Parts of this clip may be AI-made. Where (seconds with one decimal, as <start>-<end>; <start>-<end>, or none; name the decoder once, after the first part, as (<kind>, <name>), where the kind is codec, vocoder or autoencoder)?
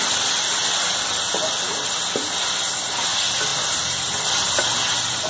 none